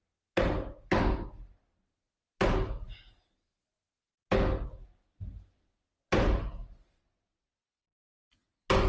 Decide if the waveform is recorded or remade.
recorded